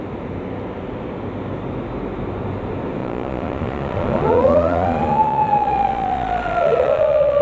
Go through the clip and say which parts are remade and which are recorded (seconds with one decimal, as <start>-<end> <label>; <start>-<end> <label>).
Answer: 0.0-3.0 recorded; 3.0-7.4 remade